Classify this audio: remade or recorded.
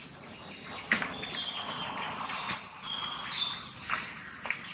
recorded